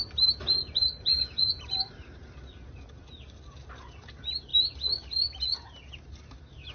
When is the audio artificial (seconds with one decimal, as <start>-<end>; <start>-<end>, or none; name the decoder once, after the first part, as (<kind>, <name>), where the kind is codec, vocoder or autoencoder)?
1.1-1.6 (vocoder, Vocos)